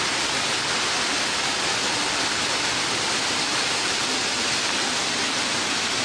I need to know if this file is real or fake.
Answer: real